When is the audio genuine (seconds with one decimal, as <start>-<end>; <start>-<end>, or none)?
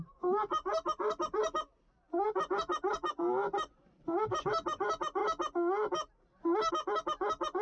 0.0-7.6